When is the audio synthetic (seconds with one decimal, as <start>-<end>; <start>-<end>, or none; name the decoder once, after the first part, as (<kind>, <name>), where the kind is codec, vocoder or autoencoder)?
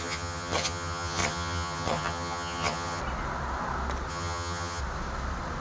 0.0-3.0 (vocoder, HiFi-GAN); 4.1-4.8